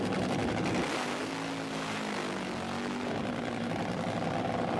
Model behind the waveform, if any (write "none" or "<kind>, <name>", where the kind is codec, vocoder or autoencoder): none